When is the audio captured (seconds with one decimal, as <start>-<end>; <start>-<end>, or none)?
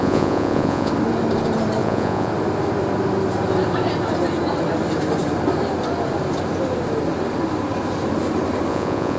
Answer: 0.9-1.8; 2.3-8.7